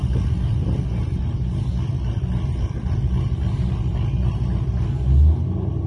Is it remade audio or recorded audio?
recorded